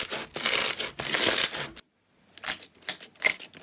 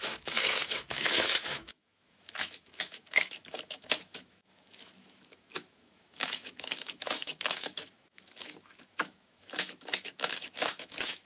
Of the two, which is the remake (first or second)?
second